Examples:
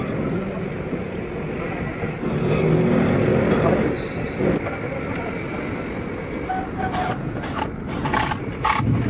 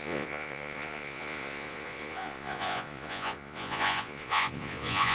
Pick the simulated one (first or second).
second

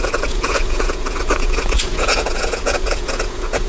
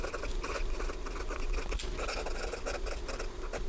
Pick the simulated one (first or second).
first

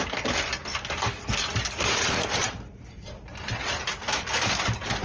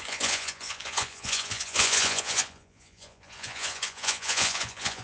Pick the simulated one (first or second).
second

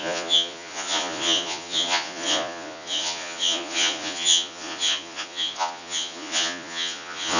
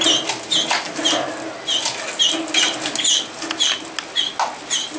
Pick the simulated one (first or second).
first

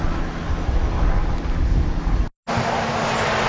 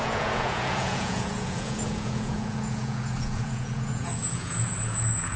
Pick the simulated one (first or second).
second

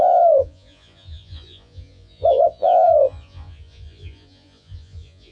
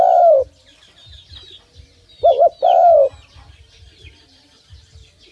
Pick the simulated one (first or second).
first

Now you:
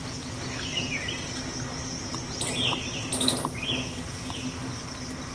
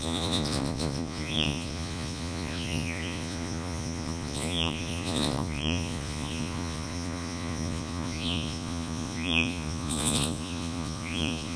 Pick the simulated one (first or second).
second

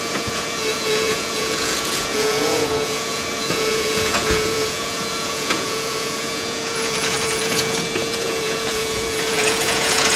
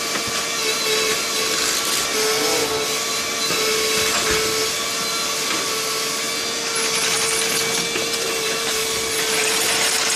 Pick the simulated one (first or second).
first